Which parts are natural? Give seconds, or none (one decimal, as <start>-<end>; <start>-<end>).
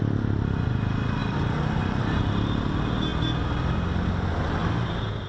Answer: 0.0-1.2; 2.2-5.3